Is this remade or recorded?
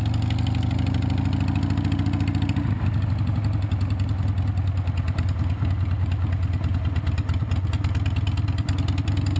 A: recorded